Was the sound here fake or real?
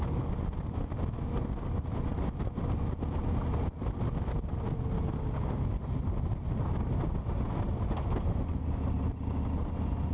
real